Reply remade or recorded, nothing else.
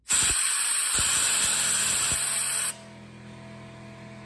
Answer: recorded